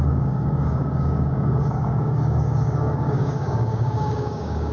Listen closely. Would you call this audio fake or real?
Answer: fake